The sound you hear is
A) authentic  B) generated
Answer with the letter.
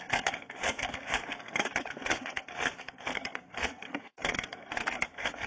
B